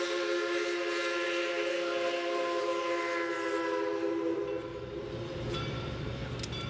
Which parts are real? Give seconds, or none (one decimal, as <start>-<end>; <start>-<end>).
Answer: 0.0-1.7; 2.6-6.7